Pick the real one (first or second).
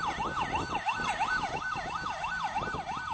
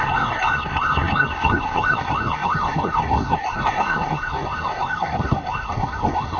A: first